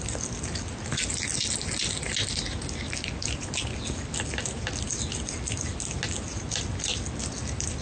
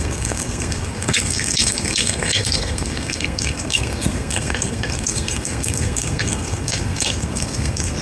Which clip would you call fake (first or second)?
second